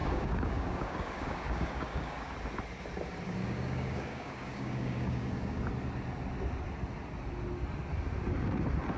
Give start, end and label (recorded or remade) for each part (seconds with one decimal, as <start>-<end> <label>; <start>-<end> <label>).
0.0-2.3 remade; 2.3-3.4 recorded; 3.4-5.6 remade; 5.6-9.0 recorded